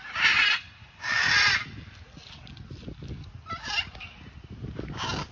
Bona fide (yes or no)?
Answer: yes